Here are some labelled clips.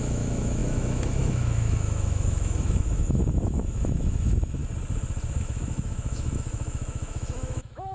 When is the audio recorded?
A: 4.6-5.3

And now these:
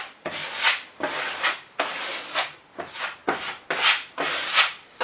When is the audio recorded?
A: 0.0-5.0

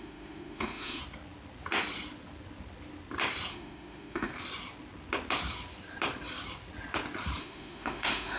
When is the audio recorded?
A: 1.0-3.5; 4.3-7.4

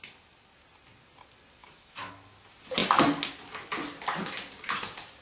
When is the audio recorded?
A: 0.0-1.6; 2.1-5.2

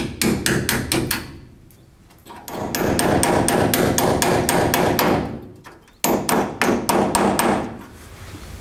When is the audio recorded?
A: 0.0-8.6